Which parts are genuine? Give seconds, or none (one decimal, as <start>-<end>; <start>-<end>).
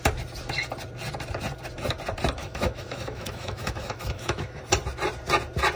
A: 0.0-2.4; 4.6-5.8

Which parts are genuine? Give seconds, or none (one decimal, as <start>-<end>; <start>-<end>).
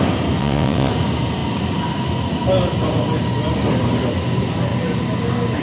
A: 0.0-0.4; 0.9-5.6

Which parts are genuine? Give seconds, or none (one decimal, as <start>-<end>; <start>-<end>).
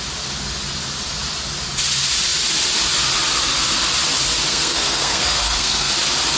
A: 0.0-4.5; 5.9-6.4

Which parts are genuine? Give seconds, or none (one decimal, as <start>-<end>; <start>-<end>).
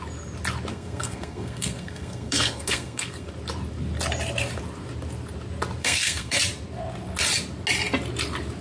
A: 0.0-0.7; 3.3-5.8; 6.4-8.6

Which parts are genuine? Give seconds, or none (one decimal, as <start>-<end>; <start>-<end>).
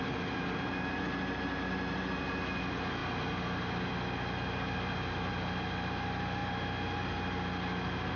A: 0.0-8.2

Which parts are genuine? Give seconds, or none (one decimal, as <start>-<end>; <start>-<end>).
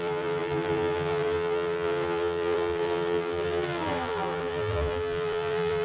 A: none